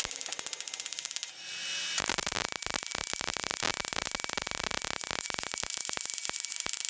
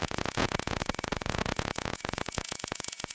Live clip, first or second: first